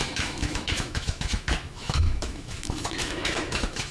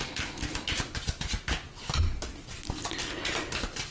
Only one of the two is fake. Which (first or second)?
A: first